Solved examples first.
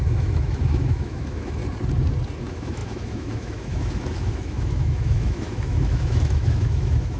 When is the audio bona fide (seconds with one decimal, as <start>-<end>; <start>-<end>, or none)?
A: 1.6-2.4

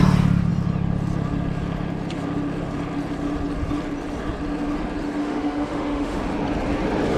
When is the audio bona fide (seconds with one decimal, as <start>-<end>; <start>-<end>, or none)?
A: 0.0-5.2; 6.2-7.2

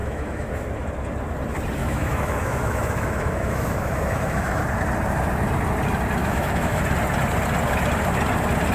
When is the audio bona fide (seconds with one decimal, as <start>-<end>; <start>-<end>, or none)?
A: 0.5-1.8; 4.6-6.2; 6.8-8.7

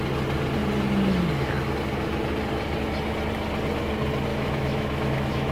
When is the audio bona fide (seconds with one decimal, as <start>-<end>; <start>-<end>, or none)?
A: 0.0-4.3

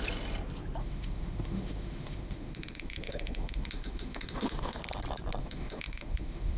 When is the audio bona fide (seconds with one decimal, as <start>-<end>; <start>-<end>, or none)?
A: 0.0-0.8; 4.8-5.4

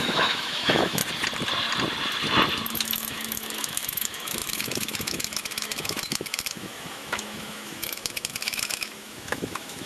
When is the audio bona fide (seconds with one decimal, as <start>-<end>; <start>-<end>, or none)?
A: 1.0-2.7

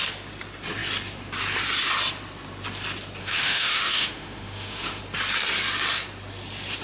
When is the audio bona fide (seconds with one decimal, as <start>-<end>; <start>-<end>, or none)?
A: 0.0-3.2; 5.0-6.8